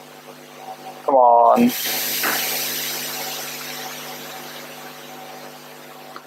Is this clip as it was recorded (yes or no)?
yes